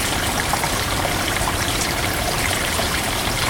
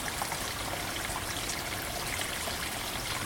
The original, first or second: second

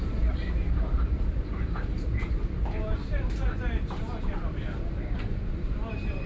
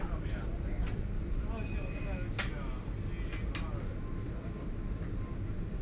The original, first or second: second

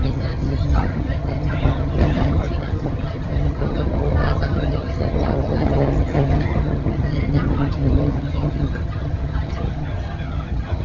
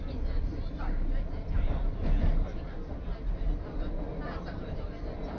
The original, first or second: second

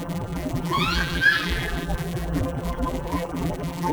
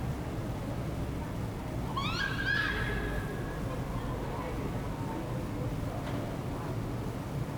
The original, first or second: second